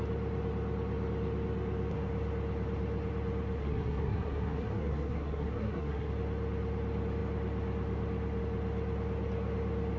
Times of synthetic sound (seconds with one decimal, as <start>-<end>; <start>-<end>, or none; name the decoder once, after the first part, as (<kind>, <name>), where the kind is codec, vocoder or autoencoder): 3.6-6.1 (codec, SNAC)